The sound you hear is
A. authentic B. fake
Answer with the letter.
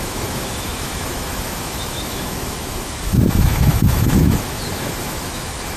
B